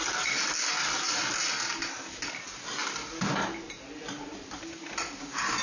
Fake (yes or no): no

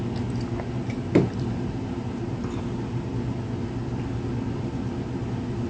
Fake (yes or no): no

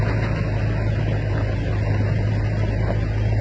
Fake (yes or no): no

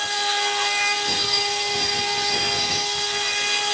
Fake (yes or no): yes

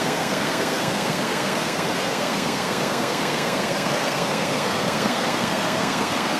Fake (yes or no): yes